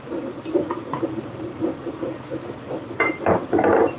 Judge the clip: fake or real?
real